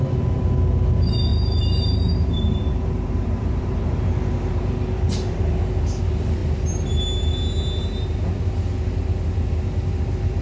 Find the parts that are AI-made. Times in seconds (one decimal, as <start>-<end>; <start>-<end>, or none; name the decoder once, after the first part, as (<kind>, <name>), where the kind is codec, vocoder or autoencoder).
1.3-5.4 (vocoder, BigVGAN v2)